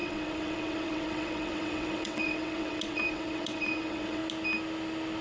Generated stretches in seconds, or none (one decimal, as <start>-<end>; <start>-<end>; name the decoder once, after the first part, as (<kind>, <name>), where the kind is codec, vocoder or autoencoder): 0.0-4.2 (vocoder, WaveNeXt)